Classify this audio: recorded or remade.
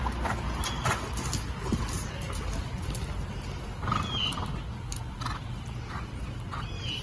recorded